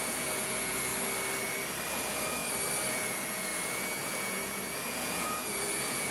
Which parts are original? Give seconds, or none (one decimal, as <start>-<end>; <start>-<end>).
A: 0.9-1.9; 2.4-2.9